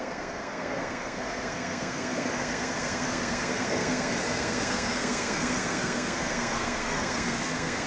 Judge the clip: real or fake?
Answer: fake